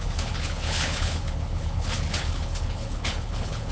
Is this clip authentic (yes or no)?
no